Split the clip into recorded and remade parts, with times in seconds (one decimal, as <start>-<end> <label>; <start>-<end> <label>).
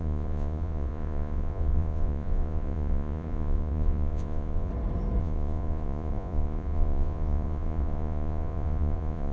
0.0-4.7 remade; 4.7-5.2 recorded; 5.2-9.3 remade